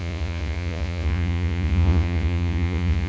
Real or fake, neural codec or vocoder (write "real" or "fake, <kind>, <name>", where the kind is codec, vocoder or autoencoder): fake, vocoder, Vocos